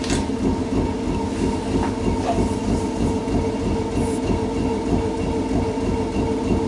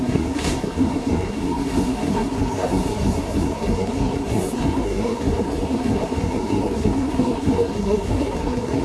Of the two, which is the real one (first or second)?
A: first